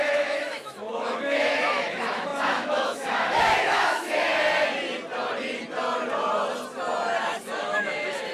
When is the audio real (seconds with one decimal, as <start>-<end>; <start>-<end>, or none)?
4.3-7.2